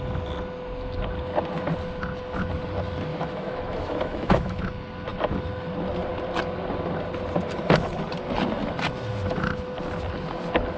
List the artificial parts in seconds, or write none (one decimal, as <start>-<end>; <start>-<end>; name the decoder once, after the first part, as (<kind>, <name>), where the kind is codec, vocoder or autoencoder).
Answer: 3.1-4.6 (autoencoder, DAC-VAE)